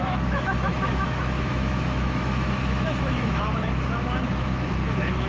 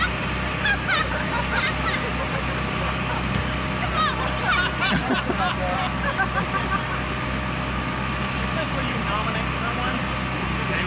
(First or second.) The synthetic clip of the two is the first